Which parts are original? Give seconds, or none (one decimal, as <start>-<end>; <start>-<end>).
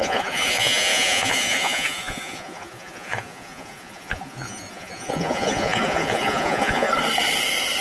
6.9-7.8